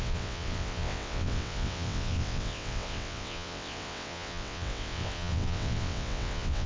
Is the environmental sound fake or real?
fake